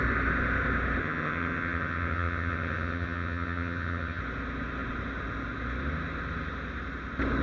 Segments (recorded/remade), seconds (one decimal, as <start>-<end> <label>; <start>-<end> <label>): 0.0-1.0 recorded; 1.0-4.2 remade; 4.2-7.4 recorded